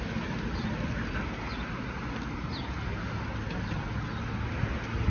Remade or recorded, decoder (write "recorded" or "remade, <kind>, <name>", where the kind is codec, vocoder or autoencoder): recorded